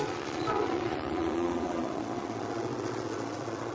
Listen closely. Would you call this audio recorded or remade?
remade